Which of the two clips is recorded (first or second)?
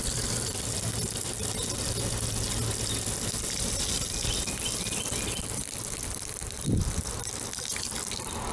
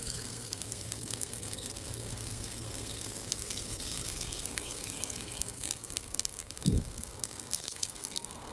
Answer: first